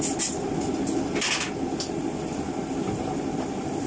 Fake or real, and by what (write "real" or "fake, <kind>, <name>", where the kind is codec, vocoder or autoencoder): real